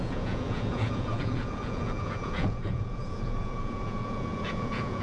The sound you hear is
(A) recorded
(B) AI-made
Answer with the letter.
B